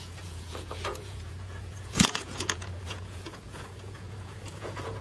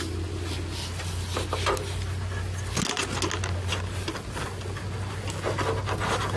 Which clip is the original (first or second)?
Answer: second